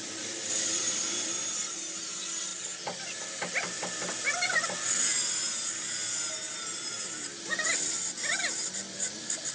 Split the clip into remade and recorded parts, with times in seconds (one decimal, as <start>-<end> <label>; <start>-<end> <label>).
0.0-9.5 recorded